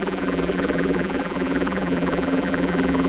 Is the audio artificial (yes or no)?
yes